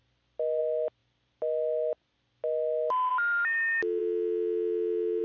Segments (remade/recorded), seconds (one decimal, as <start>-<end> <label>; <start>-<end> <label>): 0.0-5.2 recorded